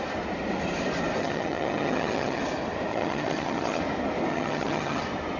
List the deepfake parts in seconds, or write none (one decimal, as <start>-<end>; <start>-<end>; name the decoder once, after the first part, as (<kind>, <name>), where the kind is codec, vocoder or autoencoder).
1.2-2.4 (vocoder, HiFi-GAN); 2.9-3.8; 4.3-5.0